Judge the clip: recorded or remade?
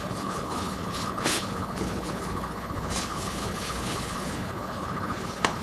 remade